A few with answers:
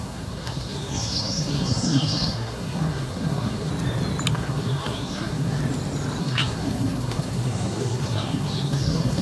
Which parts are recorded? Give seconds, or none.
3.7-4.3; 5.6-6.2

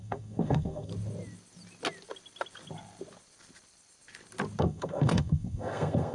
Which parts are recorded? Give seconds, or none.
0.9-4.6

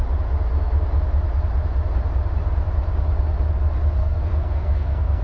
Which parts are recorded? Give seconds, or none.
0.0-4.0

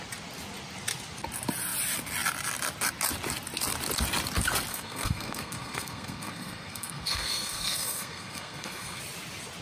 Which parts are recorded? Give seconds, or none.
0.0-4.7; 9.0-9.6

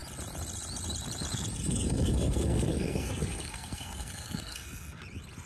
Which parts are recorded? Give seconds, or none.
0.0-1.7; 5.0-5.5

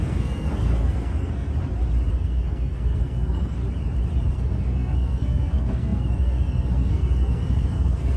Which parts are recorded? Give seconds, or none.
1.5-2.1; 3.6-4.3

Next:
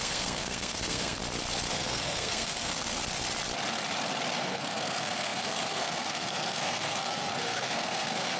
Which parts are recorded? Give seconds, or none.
1.2-1.7; 3.0-4.4